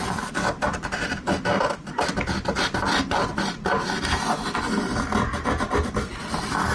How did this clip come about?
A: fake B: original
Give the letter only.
B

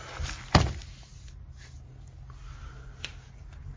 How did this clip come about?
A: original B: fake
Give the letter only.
A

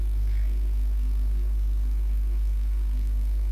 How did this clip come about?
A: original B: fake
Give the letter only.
B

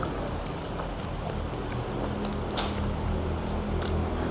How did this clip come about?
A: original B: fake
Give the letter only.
A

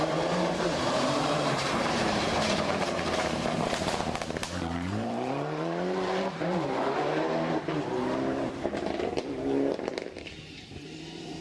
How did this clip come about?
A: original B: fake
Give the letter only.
B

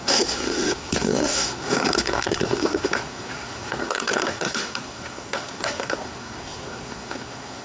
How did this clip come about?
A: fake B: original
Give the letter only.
A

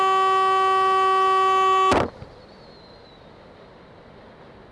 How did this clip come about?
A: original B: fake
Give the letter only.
A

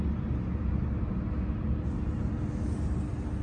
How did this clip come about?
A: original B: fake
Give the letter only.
A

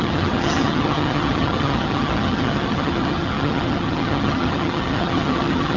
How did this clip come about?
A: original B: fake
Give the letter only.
B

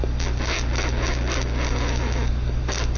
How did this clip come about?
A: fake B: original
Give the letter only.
B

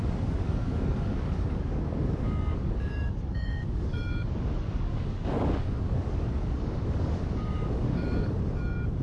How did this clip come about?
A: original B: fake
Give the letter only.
B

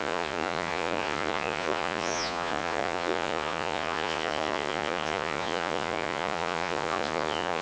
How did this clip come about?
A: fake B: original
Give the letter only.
A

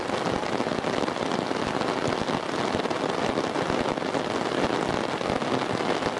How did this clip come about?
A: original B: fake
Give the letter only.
A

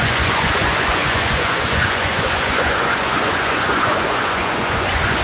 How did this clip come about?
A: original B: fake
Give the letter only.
B